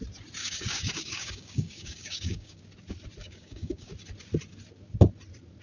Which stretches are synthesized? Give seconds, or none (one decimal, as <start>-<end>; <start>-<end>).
0.4-2.6; 3.2-3.9